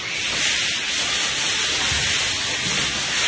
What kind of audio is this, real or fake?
real